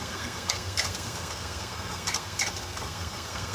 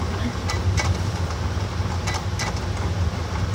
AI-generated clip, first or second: first